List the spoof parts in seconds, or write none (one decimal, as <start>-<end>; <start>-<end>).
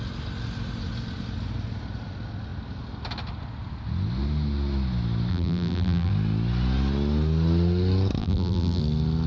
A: 5.3-6.1; 8.2-8.8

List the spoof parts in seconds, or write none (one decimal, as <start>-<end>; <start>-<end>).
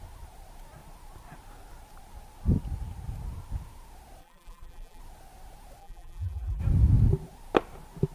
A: 4.2-5.0; 5.8-6.6